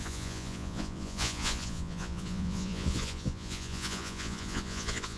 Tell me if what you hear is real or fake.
fake